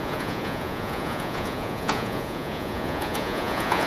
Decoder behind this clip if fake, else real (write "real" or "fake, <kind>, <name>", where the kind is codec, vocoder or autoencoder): fake, vocoder, Vocos